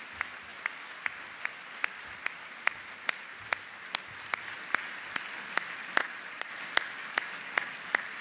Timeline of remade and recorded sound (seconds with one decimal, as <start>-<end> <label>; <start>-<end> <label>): 0.0-6.0 recorded; 6.0-6.5 remade; 6.5-8.2 recorded